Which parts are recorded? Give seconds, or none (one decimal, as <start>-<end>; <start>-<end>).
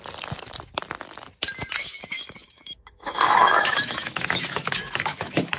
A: 0.0-1.8